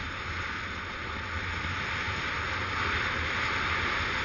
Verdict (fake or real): real